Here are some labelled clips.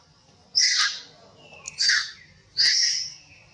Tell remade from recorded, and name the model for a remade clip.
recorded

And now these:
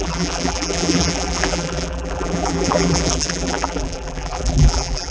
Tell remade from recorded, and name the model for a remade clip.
remade, vocoder, BigVGAN v2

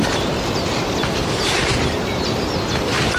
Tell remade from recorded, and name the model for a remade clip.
recorded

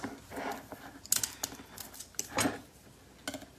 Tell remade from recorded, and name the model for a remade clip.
recorded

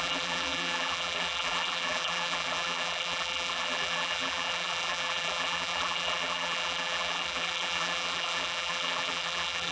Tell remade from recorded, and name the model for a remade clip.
remade, vocoder, BigVGAN v2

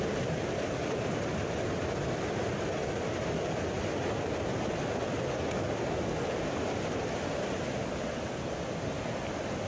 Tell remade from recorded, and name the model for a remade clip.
recorded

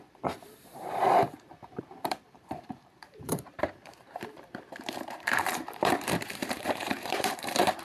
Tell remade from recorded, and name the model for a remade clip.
remade, vocoder, BigVGAN v2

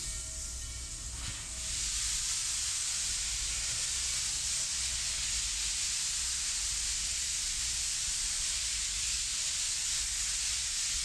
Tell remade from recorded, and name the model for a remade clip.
recorded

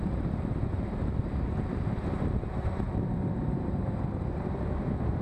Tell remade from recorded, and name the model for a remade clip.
remade, vocoder, BigVGAN v2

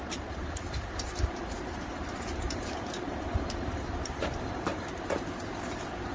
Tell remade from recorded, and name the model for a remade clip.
remade, vocoder, BigVGAN v2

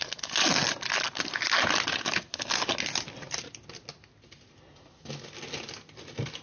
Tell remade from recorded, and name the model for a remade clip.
recorded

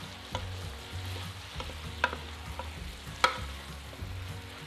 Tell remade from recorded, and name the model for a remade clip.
recorded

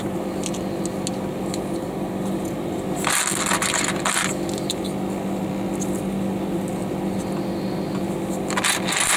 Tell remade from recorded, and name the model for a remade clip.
recorded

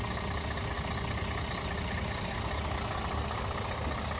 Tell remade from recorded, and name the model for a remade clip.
recorded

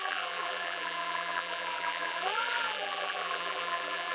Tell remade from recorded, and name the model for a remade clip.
remade, vocoder, BigVGAN v2